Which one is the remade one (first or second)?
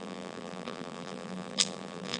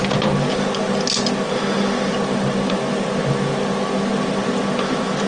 first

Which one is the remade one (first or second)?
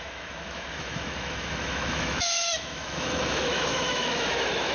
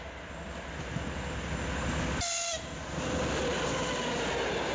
first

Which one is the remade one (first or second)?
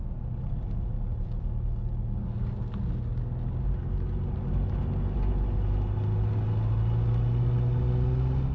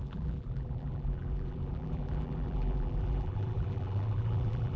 second